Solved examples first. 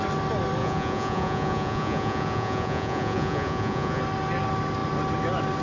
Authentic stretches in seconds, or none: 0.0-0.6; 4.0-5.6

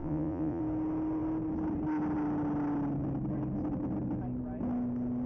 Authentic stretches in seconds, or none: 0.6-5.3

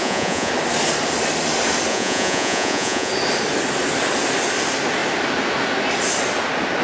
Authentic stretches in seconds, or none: 0.5-1.9; 3.1-6.8